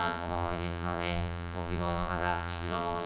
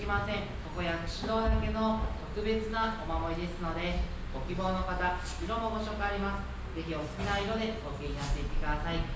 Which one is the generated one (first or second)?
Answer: first